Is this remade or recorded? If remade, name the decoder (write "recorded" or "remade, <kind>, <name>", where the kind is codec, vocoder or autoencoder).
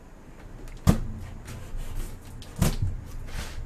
recorded